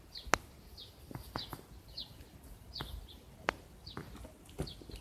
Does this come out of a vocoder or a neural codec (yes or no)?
no